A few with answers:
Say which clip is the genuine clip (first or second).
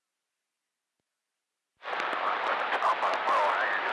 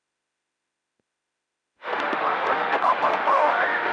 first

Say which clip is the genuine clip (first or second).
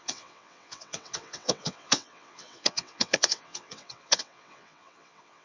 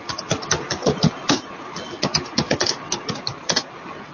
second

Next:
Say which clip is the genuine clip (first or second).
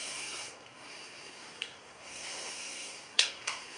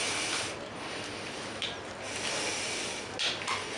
second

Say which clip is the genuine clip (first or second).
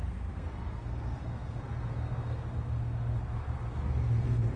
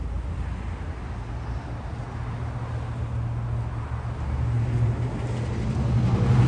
second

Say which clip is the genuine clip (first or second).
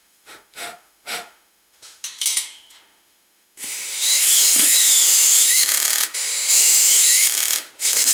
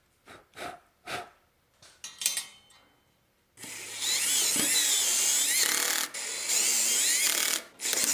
second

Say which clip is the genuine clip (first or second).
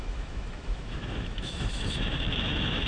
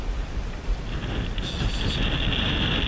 second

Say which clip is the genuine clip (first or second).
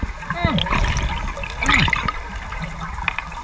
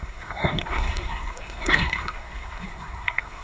first